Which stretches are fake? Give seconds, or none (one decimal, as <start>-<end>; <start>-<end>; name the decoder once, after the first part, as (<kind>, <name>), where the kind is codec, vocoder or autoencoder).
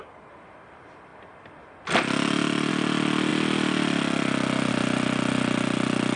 none